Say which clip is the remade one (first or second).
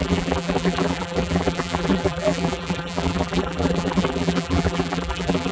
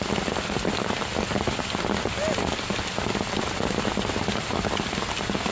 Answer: first